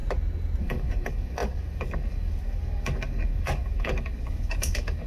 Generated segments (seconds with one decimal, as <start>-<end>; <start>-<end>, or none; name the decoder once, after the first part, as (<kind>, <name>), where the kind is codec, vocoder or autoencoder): 0.6-5.1 (codec, DAC)

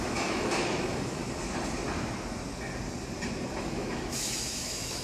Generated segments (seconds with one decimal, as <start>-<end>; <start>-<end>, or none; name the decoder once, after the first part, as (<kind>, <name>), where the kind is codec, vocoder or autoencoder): 0.0-1.2 (autoencoder, DAC-VAE); 3.6-5.0

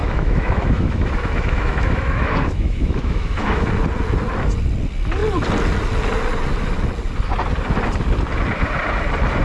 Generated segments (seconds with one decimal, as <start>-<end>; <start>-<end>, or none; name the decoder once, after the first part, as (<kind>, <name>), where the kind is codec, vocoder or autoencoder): 0.0-3.7 (autoencoder, DAC-VAE)

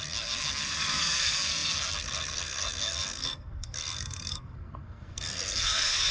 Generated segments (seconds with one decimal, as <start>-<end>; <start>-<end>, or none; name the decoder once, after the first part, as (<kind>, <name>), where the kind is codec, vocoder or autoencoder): 0.0-6.1 (codec, SNAC)

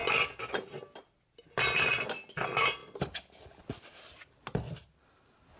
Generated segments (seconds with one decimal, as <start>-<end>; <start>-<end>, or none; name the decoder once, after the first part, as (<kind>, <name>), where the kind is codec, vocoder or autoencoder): none

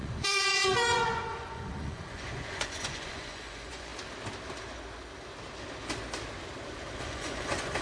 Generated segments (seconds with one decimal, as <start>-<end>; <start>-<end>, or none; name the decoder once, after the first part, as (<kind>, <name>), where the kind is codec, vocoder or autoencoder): 0.0-3.9 (vocoder, Vocos); 7.0-7.8